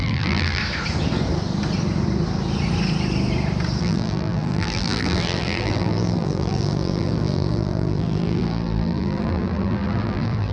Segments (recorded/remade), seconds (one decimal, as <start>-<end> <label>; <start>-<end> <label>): 0.0-0.6 remade; 0.6-3.8 recorded; 3.8-10.5 remade